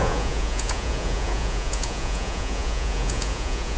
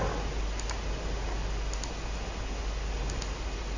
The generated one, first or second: first